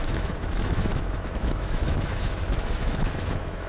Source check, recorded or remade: remade